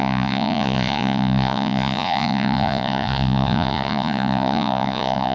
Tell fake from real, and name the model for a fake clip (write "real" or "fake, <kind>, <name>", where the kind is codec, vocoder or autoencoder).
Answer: fake, vocoder, Vocos